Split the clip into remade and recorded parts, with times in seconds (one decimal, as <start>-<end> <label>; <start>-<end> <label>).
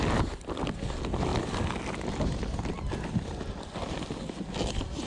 0.0-5.1 recorded